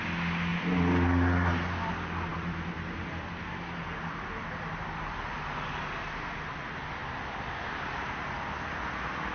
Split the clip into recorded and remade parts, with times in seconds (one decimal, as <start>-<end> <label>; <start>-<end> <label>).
0.0-2.3 recorded; 2.3-3.4 remade; 3.4-9.3 recorded